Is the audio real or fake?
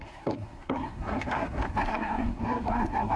fake